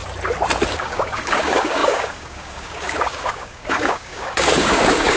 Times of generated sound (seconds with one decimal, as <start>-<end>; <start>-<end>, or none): 0.7-5.2